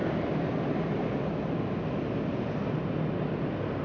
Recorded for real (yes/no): yes